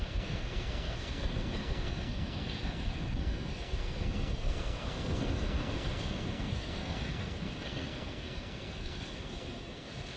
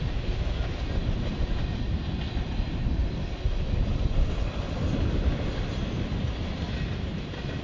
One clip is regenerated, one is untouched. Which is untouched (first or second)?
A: second